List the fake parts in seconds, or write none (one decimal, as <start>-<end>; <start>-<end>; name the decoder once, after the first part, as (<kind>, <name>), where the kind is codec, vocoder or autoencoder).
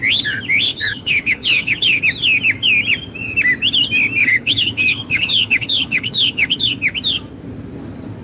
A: 0.7-2.0 (codec, HILCodec); 4.2-6.7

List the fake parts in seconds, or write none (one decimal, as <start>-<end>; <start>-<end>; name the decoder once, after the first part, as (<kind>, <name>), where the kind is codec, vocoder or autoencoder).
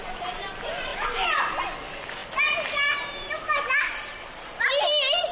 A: none